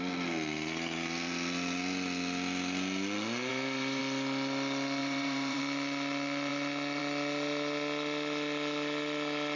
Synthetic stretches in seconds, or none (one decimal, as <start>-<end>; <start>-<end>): 3.5-4.0; 5.0-5.6